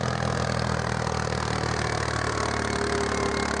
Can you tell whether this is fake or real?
real